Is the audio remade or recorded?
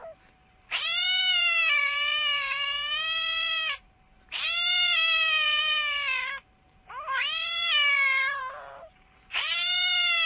remade